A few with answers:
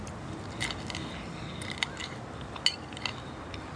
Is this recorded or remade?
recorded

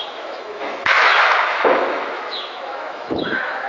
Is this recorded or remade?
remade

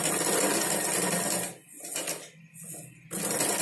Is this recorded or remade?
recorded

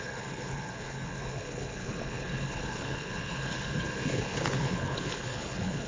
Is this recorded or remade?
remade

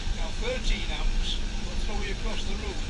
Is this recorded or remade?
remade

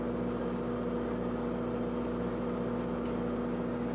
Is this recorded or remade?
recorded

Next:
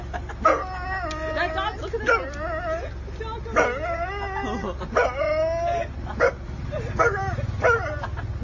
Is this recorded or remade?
recorded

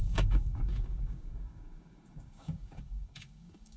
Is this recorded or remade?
remade